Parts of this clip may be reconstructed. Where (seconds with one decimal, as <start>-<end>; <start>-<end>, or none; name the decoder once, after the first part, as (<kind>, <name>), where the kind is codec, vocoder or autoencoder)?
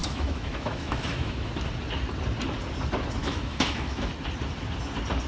0.0-1.5 (autoencoder, DAC-VAE); 3.2-4.1